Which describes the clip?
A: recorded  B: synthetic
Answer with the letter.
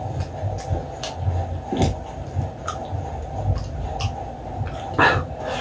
A